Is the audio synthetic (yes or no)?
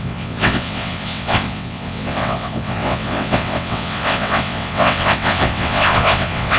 yes